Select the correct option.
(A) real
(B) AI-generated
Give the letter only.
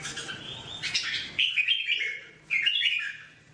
A